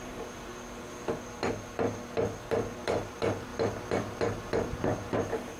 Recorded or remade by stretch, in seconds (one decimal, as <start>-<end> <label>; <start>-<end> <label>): 0.0-0.5 remade; 0.5-3.1 recorded; 3.1-3.5 remade; 3.5-4.2 recorded; 4.2-5.6 remade